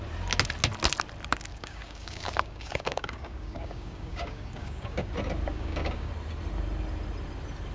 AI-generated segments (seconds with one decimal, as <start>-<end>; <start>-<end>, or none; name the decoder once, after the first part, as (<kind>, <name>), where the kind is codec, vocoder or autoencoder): 1.5-5.1 (codec, DAC); 5.5-6.1